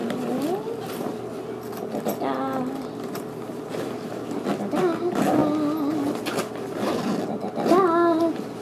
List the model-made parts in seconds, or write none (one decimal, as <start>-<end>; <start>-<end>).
none